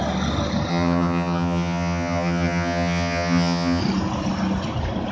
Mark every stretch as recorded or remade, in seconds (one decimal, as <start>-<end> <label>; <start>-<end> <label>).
0.0-0.7 recorded; 0.7-3.8 remade; 3.8-5.1 recorded